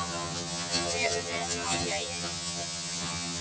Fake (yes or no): yes